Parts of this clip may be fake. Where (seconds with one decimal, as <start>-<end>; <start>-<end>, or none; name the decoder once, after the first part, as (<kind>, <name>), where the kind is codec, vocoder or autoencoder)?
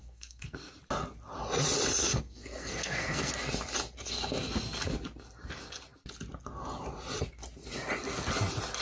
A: 0.0-0.7 (codec, SNAC); 2.0-3.3